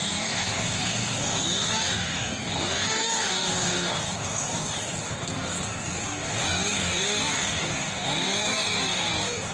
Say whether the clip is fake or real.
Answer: fake